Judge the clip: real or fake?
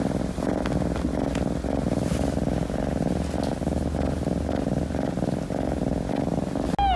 real